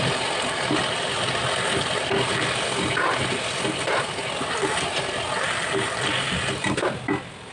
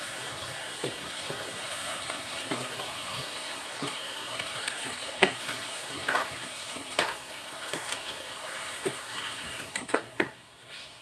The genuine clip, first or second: first